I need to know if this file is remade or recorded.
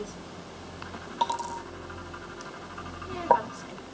recorded